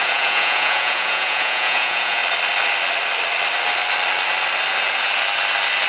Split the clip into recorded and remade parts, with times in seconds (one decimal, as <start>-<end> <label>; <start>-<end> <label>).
0.0-2.2 remade; 2.2-5.9 recorded